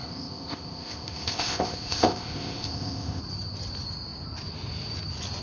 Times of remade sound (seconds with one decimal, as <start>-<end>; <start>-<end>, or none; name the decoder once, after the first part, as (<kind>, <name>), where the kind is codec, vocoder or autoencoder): 0.0-3.2 (codec, ZipCodec)